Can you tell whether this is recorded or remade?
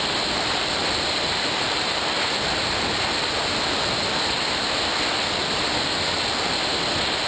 recorded